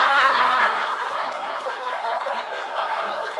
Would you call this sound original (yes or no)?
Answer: no